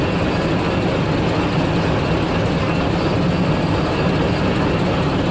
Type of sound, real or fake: real